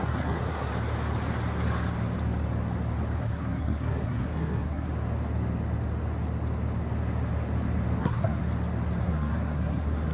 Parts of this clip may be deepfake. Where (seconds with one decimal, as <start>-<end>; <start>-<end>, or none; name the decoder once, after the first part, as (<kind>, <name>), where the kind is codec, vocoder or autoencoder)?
0.0-0.7 (codec, SNAC); 3.2-4.9; 8.0-8.4; 9.0-10.1